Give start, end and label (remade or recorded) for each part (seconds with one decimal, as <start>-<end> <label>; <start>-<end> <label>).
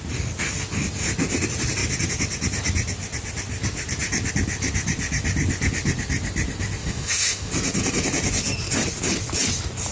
0.0-6.8 recorded; 6.8-7.5 remade; 7.5-9.9 recorded